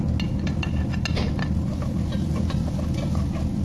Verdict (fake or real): real